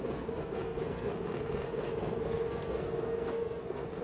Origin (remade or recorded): remade